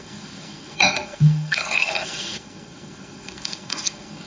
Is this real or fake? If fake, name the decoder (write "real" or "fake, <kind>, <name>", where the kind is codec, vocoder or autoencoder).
fake, codec, SNAC